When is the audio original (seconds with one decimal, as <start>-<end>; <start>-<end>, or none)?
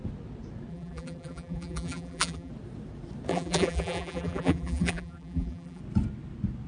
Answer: 0.0-0.7; 2.5-3.3; 5.8-6.7